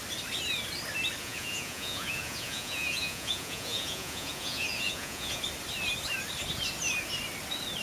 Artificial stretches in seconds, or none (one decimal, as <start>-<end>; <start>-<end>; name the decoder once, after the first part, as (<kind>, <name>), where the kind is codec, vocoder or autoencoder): 1.2-5.4 (vocoder, Vocos)